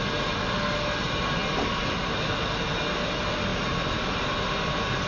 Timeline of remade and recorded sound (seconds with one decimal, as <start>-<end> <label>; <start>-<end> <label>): 0.0-5.1 recorded